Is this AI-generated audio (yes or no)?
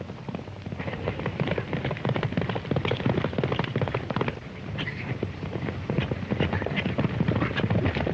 yes